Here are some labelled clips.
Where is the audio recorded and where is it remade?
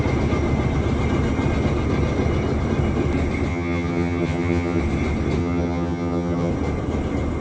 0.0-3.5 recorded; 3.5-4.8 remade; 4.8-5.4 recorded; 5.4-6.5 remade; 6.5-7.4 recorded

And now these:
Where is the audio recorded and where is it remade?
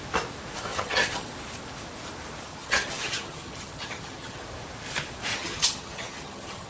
0.0-0.7 recorded; 0.7-1.3 remade; 1.3-2.5 recorded; 2.5-4.4 remade; 4.4-5.3 recorded; 5.3-6.7 remade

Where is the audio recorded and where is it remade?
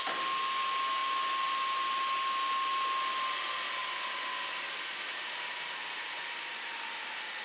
0.0-7.4 recorded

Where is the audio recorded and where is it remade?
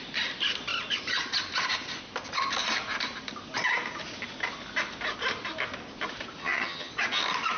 0.0-6.4 recorded; 6.4-6.9 remade; 6.9-7.6 recorded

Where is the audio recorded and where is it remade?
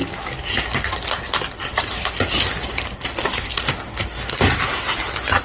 0.0-5.4 recorded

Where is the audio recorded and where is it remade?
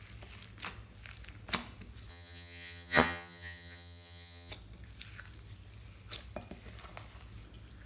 0.0-2.1 recorded; 2.1-4.5 remade; 4.5-7.9 recorded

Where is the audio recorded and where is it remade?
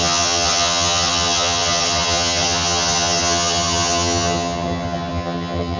0.0-5.8 remade